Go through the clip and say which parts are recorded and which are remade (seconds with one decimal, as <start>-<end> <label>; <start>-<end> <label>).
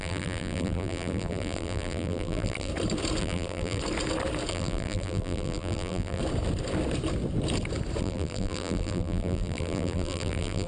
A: 0.0-2.7 remade; 2.7-3.2 recorded; 3.2-3.8 remade; 3.8-4.5 recorded; 4.5-6.2 remade; 6.2-8.0 recorded; 8.0-10.7 remade